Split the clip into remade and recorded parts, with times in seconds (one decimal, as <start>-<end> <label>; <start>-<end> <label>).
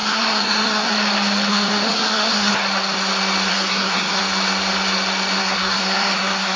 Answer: 0.0-0.9 remade; 0.9-1.5 recorded; 1.5-2.5 remade; 2.5-3.5 recorded; 3.5-4.2 remade; 4.2-5.4 recorded; 5.4-6.6 remade